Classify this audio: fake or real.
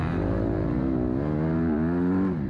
real